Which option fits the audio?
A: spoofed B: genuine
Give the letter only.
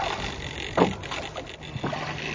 B